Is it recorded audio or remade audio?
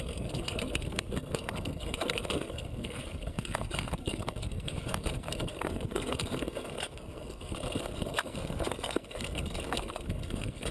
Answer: remade